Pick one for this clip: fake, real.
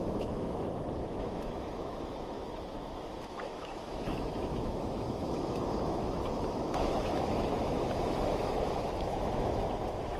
fake